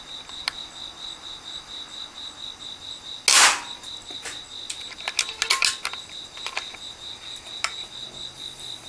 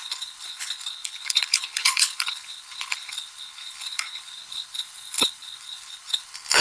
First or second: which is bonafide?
first